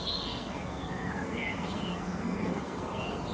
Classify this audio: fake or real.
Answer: fake